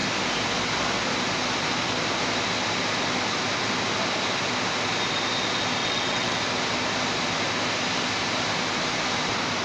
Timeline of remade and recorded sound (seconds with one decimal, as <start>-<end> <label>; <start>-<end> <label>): 0.0-5.8 recorded; 5.8-6.4 remade; 6.4-9.6 recorded